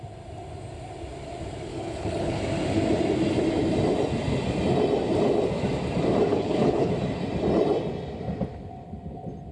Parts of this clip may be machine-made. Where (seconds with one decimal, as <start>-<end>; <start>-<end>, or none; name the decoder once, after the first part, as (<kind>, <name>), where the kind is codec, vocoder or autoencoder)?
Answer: 1.7-2.4 (codec, HILCodec); 6.3-6.9